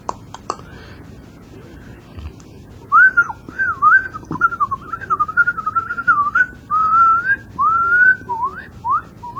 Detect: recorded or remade remade